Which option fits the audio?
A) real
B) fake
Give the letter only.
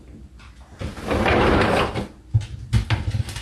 A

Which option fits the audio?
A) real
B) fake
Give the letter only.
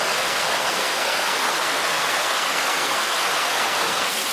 B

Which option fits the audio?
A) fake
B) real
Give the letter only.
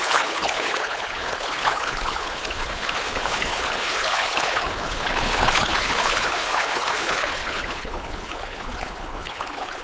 A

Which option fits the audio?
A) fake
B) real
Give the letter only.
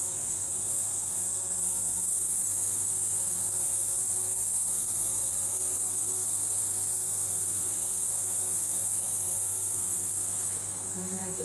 A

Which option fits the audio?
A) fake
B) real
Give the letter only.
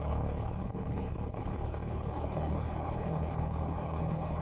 A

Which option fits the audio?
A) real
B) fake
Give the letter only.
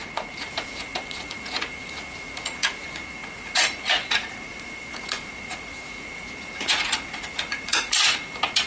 B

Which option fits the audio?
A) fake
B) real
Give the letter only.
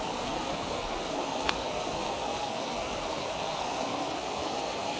A